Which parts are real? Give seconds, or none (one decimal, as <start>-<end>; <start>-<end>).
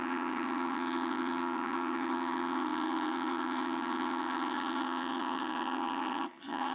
none